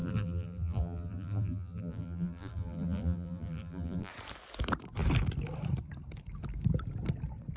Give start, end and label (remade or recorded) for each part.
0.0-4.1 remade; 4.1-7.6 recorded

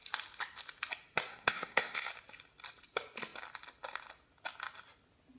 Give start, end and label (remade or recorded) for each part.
0.0-1.3 recorded; 1.3-2.1 remade; 2.1-5.4 recorded

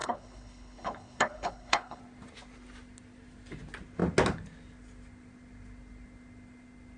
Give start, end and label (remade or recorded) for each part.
0.0-2.0 remade; 2.0-7.0 recorded

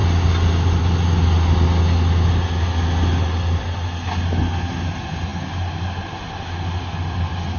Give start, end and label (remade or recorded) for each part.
0.0-7.6 recorded